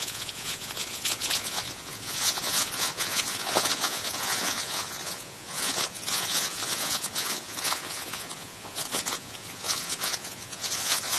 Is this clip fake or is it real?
fake